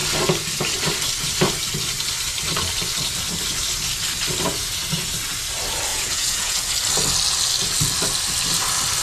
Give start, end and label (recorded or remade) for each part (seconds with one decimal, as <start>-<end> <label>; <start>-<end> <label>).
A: 0.0-5.9 recorded; 5.9-6.7 remade; 6.7-9.0 recorded